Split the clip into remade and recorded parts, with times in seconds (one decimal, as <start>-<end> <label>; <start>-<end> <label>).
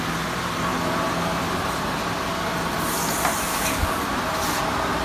0.0-3.5 recorded; 3.5-4.0 remade; 4.0-5.0 recorded